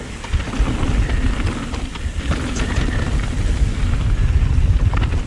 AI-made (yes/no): no